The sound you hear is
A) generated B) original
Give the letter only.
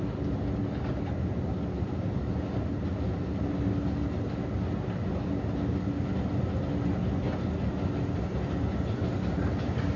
B